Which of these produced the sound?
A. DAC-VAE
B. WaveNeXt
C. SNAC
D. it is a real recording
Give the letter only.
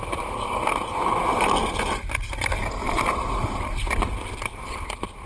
D